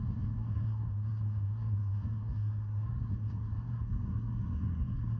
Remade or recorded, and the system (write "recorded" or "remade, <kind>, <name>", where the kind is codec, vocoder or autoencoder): remade, codec, SNAC